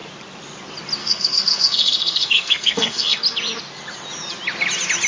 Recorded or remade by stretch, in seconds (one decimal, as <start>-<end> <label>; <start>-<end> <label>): 0.0-1.0 recorded; 1.0-3.2 remade; 3.2-5.1 recorded